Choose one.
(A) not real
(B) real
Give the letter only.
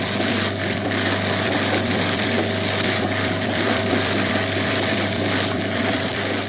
A